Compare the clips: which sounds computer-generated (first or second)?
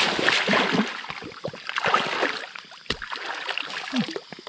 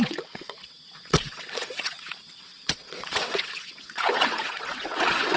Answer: second